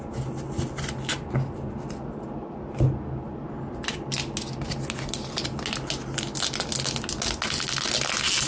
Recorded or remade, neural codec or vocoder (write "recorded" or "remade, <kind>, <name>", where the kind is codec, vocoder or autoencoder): recorded